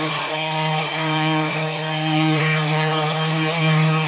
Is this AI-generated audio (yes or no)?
yes